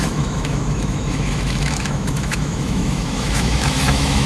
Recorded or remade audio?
remade